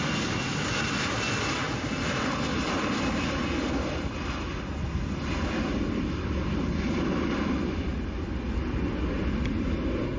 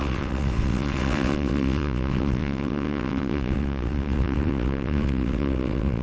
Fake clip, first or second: second